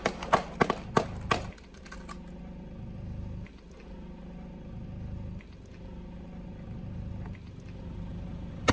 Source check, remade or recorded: recorded